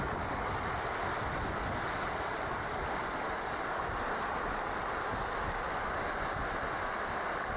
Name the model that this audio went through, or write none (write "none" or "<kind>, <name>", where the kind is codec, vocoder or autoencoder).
none